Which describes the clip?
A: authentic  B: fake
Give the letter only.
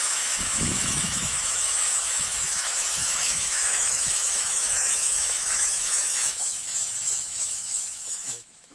B